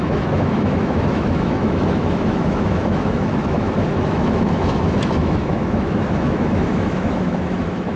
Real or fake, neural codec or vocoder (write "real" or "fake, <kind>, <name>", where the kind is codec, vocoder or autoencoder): fake, autoencoder, DAC-VAE